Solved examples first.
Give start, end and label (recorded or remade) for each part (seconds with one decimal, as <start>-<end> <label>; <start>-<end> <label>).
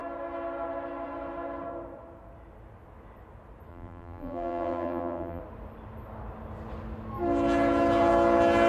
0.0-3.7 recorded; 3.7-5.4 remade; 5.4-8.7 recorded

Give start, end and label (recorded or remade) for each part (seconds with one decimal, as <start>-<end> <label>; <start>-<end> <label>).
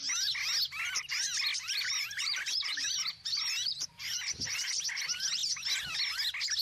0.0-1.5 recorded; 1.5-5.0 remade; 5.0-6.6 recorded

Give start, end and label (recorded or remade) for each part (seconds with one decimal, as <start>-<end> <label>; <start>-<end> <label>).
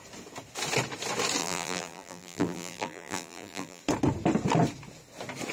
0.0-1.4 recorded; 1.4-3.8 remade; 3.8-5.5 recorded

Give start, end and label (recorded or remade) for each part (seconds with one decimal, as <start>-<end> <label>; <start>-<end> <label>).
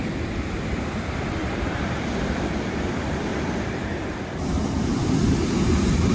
0.0-1.4 recorded; 1.4-2.1 remade; 2.1-3.3 recorded; 3.3-5.1 remade; 5.1-6.1 recorded